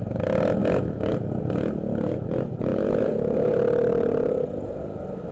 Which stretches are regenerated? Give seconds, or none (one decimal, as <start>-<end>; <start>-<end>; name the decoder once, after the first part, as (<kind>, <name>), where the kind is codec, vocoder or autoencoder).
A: none